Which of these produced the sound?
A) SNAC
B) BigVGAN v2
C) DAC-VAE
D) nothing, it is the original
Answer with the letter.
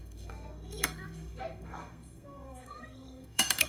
A